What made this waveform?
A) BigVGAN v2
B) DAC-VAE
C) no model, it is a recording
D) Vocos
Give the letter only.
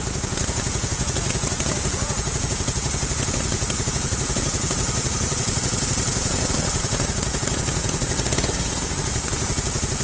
D